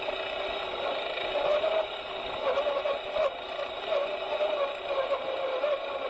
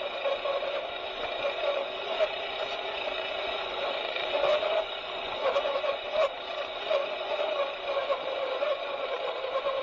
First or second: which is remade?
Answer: second